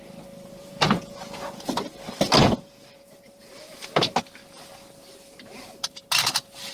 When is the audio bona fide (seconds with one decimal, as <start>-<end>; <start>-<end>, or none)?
0.0-0.6; 1.7-2.4; 3.5-6.7